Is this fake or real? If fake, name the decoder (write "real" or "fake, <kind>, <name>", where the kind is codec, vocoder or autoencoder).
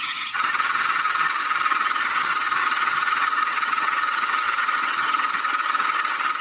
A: fake, vocoder, HiFi-GAN